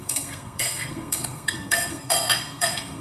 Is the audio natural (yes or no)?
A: no